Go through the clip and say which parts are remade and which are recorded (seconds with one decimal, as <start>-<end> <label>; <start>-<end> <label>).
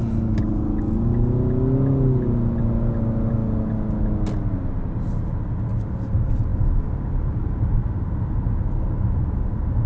0.0-9.9 recorded